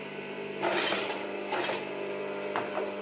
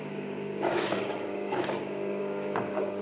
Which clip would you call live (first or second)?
first